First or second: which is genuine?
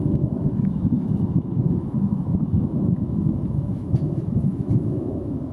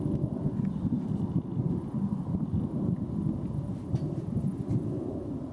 second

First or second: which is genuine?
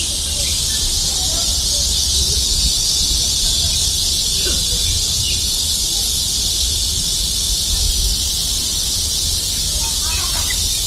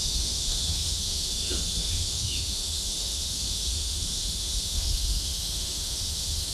first